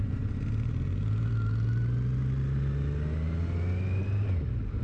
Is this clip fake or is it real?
real